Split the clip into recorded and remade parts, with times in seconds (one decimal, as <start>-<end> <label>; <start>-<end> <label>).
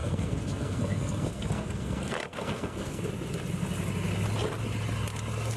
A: 0.0-3.1 remade; 3.1-5.6 recorded